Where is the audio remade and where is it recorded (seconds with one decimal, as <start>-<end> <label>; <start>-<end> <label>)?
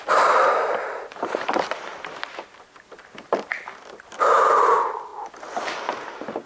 0.0-5.1 remade; 5.1-6.5 recorded